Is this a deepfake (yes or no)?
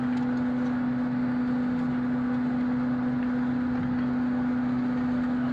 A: no